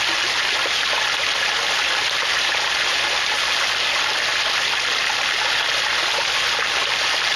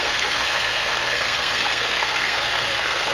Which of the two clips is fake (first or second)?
second